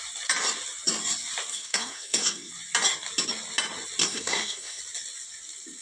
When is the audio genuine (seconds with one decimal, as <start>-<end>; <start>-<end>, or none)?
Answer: 0.0-1.5; 2.5-4.0; 4.8-5.8